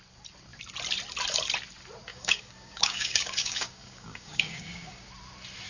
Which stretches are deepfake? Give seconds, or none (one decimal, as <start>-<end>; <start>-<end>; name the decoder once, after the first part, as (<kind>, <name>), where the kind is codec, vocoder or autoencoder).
2.1-5.1 (codec, DAC)